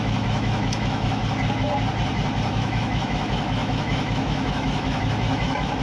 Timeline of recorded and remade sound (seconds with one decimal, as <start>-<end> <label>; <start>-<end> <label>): 0.0-1.2 remade; 1.2-2.5 recorded; 2.5-5.8 remade